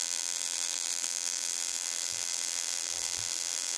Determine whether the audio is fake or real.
fake